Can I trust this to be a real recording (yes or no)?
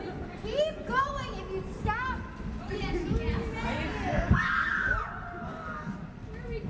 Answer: yes